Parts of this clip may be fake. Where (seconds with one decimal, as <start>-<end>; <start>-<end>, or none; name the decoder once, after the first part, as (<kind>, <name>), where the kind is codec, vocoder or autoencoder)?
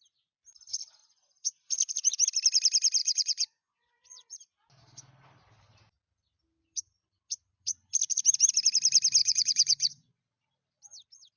1.0-1.6 (vocoder, Vocos); 3.0-4.4; 9.2-10.2